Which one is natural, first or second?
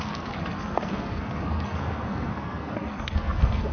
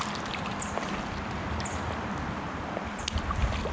second